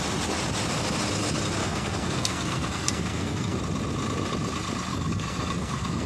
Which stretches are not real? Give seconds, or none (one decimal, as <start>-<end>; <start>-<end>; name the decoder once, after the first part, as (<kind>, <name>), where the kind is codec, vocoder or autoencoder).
1.6-3.6 (codec, SNAC); 4.9-6.1